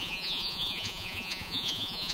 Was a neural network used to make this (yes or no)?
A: yes